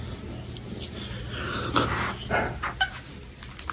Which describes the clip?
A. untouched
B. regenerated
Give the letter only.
A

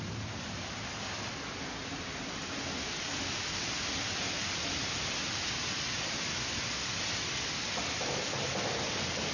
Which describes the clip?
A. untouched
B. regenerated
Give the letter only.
A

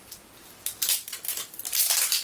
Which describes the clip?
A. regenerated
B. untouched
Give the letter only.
A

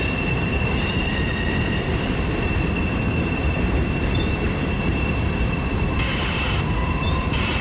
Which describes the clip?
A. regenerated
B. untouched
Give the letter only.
A